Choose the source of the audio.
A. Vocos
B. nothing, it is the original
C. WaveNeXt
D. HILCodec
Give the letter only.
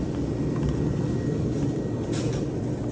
B